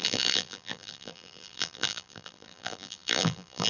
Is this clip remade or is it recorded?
remade